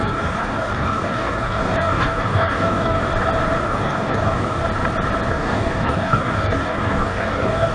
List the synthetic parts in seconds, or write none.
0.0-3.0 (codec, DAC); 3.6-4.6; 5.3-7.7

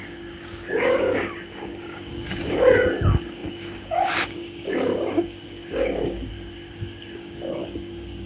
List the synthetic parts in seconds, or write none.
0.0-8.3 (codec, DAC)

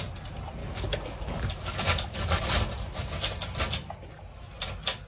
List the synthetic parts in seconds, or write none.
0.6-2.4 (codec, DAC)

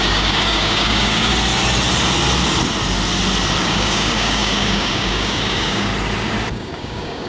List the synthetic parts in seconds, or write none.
0.0-1.3 (codec, DAC); 3.6-5.9; 6.5-7.3

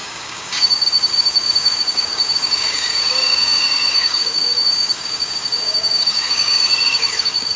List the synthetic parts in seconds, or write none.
0.0-7.6 (codec, DAC)

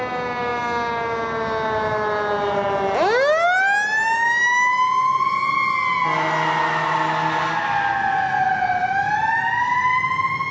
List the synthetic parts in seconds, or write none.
none

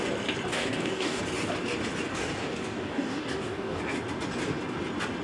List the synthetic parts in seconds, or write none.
0.5-1.2 (codec, DAC); 2.1-3.8

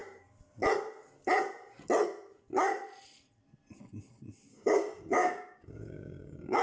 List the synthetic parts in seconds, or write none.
4.5-6.6 (codec, DAC)